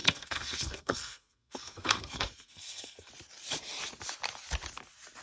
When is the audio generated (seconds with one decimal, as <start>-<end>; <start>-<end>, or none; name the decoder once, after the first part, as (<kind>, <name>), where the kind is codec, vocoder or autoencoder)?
0.0-3.1 (codec, SNAC)